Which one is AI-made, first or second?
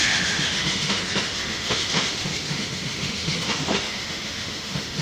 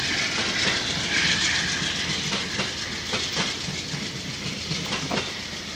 first